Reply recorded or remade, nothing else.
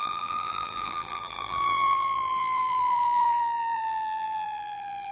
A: remade